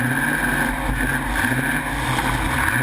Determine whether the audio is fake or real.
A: real